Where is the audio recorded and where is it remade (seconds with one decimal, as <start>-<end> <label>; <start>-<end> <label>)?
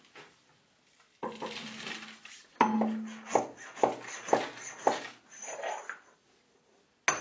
0.0-7.2 recorded